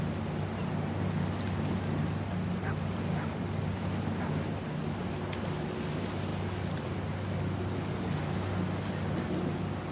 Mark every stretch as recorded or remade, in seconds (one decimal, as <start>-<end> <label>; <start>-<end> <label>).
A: 0.0-9.9 recorded